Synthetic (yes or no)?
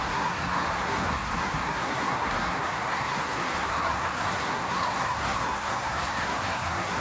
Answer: yes